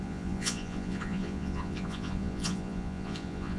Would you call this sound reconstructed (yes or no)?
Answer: yes